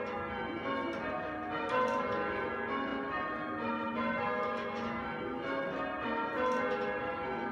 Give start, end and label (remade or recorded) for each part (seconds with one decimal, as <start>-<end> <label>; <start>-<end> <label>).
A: 0.0-7.5 recorded